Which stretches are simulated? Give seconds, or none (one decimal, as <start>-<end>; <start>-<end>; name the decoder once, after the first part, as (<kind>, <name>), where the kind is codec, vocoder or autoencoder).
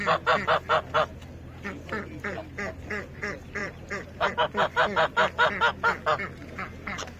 3.6-4.3 (vocoder, BigVGAN v2)